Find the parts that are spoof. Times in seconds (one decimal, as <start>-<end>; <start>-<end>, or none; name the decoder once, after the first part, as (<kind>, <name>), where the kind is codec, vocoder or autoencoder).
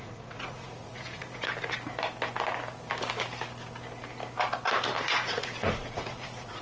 0.0-1.5 (vocoder, Vocos); 5.0-6.6